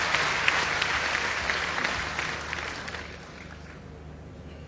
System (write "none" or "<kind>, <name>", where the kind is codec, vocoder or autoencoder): none